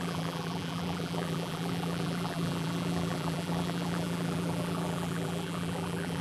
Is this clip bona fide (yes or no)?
no